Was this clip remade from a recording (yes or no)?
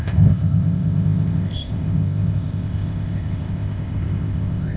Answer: yes